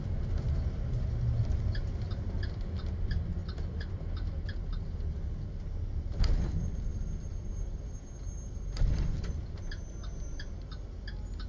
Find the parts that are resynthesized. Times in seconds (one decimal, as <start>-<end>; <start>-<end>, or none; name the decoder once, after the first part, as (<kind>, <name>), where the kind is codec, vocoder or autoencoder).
3.4-4.8 (vocoder, BigVGAN v2)